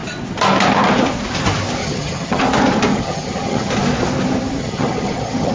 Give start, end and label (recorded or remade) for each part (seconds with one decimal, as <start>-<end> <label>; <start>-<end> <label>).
0.0-1.8 recorded; 1.8-2.4 remade; 2.4-2.9 recorded; 2.9-3.7 remade; 3.7-4.6 recorded; 4.6-5.5 remade